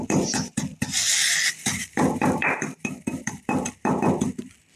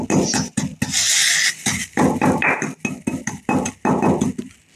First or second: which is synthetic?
first